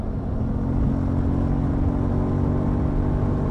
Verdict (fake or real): real